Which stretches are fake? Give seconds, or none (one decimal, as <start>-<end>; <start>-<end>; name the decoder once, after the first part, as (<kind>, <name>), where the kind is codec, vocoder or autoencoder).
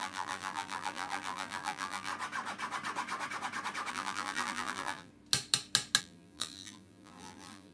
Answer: 0.0-2.1 (vocoder, BigVGAN v2); 3.9-5.1; 6.0-7.7